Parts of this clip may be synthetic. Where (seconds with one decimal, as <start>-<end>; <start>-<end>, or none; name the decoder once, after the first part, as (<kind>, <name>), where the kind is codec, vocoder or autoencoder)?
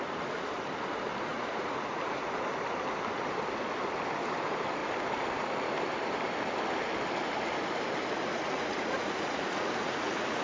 1.3-2.3 (vocoder, Vocos); 8.3-10.4